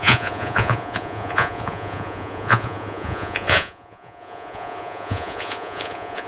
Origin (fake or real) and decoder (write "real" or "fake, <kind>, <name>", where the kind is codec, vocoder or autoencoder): fake, vocoder, Vocos